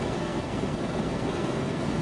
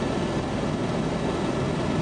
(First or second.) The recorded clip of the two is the second